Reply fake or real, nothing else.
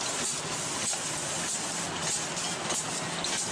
real